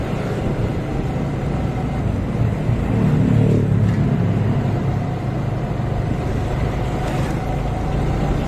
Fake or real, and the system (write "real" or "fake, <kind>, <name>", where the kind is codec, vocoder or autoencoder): real